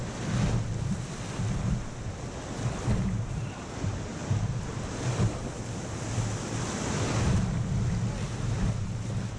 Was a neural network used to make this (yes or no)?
no